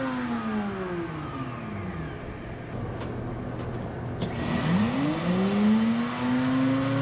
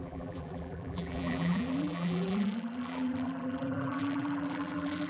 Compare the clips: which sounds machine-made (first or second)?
second